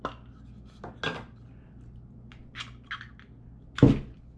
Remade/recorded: recorded